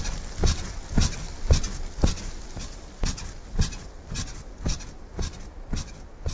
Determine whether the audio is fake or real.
real